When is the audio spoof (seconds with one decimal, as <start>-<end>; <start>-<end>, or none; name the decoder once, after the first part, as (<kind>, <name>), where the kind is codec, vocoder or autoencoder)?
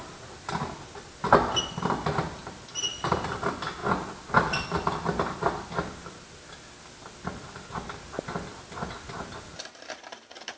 none